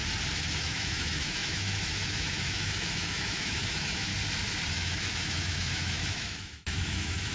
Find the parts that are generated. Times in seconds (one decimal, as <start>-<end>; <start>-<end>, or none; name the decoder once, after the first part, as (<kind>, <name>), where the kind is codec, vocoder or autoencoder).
0.6-4.1 (autoencoder, DAC-VAE); 4.7-7.3